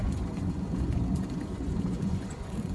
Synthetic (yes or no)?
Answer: yes